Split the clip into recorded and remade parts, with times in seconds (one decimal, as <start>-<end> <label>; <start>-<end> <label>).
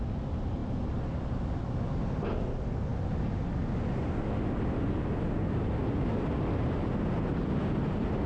0.0-8.3 recorded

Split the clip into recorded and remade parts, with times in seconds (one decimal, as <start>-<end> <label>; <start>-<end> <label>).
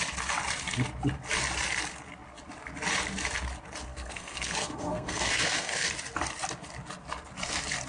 0.0-3.9 recorded; 3.9-5.9 remade; 5.9-7.9 recorded